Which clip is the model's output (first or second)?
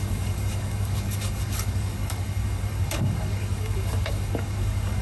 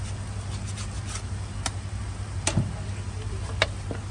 first